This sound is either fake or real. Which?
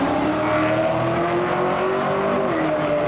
real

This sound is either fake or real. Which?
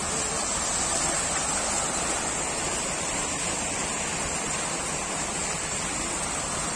real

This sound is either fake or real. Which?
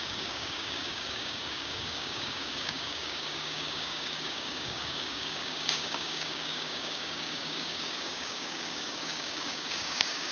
fake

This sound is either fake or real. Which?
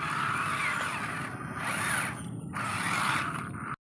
real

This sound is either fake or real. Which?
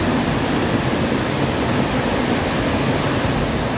real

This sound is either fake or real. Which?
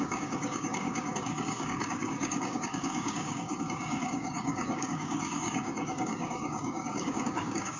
fake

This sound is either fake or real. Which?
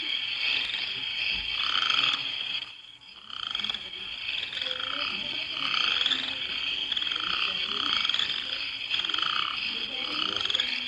real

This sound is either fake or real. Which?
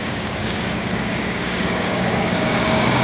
fake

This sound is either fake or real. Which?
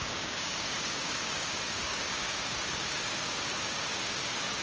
fake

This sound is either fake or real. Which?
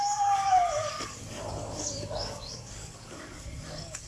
fake